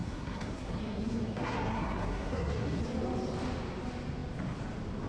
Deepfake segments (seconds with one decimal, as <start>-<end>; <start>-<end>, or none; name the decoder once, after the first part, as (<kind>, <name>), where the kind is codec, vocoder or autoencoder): 0.0-2.8 (codec, SNAC)